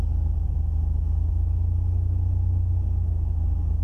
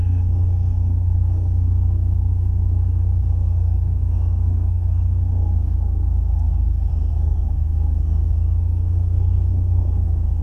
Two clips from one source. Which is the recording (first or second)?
first